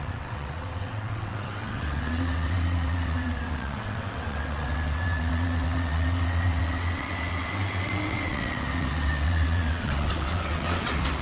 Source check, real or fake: fake